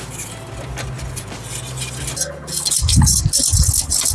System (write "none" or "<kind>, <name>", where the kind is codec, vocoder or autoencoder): none